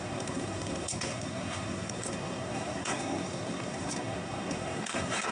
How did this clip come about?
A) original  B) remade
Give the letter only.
B